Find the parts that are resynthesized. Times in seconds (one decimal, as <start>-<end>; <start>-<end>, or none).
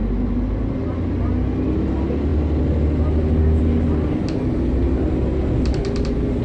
none